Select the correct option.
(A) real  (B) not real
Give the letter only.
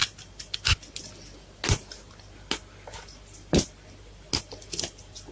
A